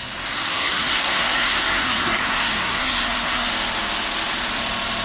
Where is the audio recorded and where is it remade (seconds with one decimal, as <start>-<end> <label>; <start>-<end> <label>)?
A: 0.0-0.5 recorded; 0.5-3.5 remade; 3.5-5.0 recorded